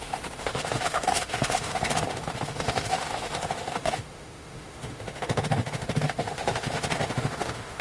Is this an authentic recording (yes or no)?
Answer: no